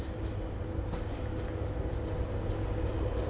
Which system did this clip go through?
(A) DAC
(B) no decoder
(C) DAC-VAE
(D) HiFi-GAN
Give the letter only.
B